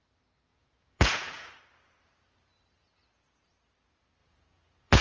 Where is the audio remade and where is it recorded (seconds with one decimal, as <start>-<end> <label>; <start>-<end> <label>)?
0.0-0.5 recorded; 0.5-1.5 remade; 1.5-4.2 recorded; 4.2-5.0 remade